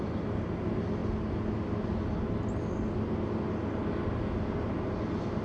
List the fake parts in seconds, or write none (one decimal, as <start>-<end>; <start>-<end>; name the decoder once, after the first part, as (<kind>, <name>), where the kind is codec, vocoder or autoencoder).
none